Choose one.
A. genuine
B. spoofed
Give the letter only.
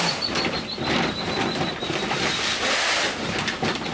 A